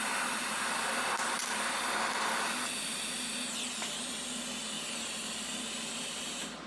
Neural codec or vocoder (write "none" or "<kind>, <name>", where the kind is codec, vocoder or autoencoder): none